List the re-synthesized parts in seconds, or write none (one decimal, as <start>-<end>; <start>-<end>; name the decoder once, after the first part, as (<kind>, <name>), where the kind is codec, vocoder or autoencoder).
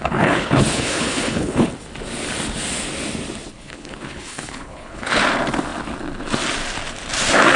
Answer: 0.0-1.7 (codec, HILCodec); 3.5-5.2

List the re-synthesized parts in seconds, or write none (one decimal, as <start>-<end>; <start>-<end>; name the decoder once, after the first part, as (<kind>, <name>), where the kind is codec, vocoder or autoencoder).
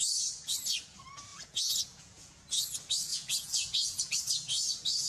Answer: 1.3-2.3 (vocoder, Vocos); 3.1-4.3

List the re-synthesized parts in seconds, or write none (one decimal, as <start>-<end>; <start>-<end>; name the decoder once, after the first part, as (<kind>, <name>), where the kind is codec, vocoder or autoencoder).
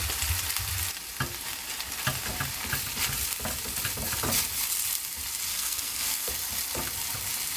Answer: 5.5-6.3 (codec, SNAC)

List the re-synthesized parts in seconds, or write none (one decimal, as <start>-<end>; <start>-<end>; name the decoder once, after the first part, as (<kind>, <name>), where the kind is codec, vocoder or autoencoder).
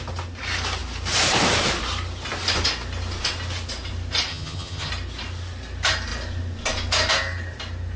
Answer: 4.3-4.9 (vocoder, HiFi-GAN)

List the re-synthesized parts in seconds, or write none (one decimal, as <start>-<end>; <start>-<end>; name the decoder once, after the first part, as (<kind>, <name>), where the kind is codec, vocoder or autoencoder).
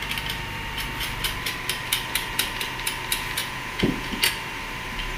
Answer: 3.4-4.3 (vocoder, Vocos)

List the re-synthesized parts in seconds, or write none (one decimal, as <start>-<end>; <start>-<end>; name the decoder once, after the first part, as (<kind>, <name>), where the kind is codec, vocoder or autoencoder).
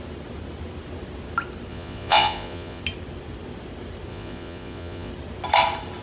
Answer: 1.7-2.8 (vocoder, Vocos); 4.1-5.1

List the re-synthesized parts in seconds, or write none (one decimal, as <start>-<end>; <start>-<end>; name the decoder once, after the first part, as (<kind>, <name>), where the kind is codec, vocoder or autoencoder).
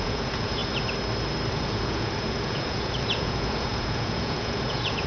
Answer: 0.0-0.6 (vocoder, Vocos); 1.5-5.1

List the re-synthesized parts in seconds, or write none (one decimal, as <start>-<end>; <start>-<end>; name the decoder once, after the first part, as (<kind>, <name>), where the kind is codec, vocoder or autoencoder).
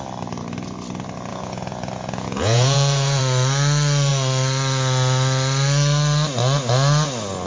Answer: 1.3-3.2 (vocoder, Vocos)